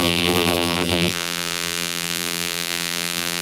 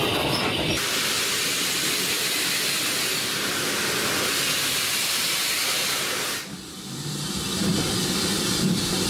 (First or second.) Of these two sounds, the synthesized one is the first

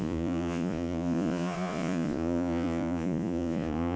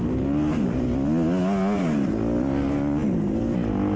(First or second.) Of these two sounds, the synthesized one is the first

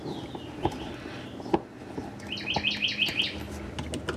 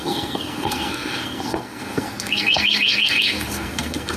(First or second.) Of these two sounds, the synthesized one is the second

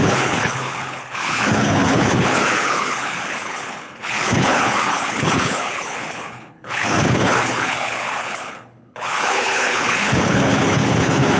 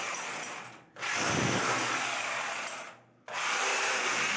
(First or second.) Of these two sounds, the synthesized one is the first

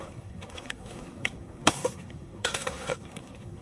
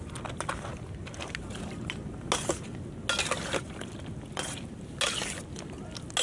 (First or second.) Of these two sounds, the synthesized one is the first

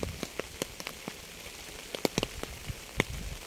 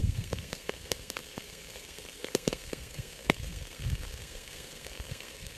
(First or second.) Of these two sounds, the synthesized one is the second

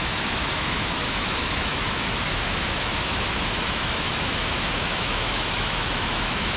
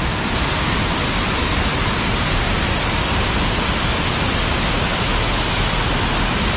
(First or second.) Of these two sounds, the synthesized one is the first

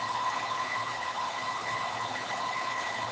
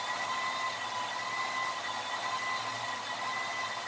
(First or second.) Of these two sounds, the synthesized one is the first